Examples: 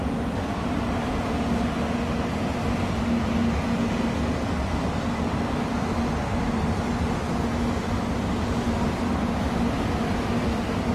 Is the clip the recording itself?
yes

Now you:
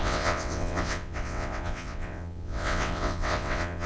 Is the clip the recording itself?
no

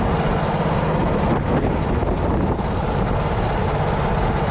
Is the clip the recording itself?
yes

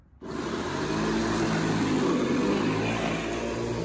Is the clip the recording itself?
yes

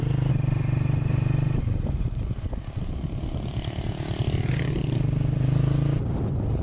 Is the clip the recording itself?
yes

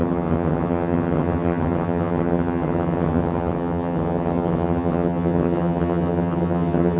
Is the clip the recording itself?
no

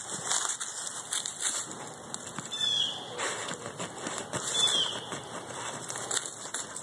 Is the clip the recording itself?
yes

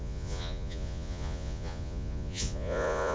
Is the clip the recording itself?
no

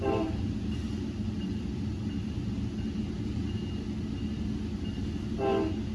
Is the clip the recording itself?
yes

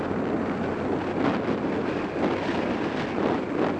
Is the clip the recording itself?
yes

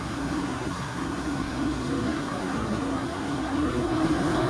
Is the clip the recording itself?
no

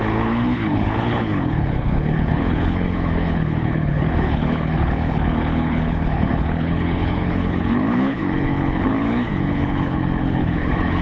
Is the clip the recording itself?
no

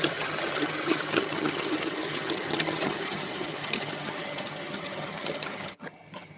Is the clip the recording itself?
no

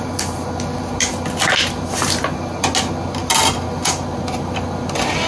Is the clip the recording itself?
yes